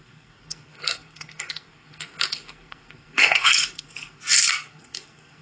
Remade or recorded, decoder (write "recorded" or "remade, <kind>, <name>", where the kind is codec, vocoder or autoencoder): remade, codec, SNAC